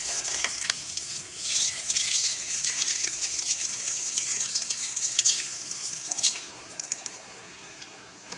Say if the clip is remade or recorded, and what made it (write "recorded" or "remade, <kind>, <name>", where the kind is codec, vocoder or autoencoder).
remade, codec, SNAC